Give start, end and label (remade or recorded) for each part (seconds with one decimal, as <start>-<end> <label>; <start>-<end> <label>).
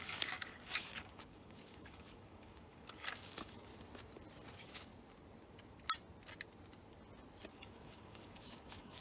0.0-3.7 remade; 3.7-4.5 recorded; 4.5-4.9 remade; 4.9-7.5 recorded; 7.5-9.0 remade